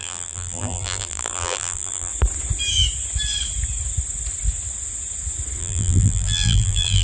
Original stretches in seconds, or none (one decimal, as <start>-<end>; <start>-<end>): 2.1-5.6